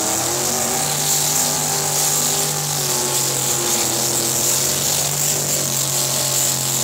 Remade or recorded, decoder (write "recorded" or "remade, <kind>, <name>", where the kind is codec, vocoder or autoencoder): recorded